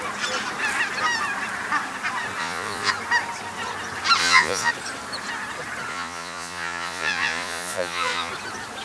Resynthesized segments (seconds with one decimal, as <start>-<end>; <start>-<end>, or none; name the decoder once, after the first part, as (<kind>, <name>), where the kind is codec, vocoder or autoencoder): 2.4-2.9 (vocoder, Vocos); 4.2-4.7; 5.9-8.3